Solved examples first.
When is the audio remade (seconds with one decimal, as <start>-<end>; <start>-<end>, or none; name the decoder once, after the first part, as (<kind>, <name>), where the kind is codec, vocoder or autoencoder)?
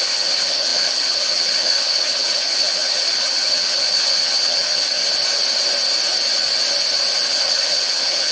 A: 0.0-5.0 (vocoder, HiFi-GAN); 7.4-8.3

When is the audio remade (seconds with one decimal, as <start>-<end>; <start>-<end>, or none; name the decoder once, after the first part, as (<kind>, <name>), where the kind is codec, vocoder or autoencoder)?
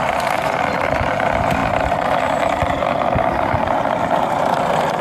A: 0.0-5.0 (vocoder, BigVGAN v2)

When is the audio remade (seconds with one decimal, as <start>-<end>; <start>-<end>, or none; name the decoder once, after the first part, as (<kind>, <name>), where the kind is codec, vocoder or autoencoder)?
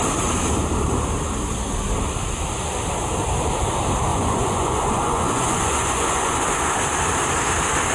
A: 4.1-6.6 (vocoder, Vocos)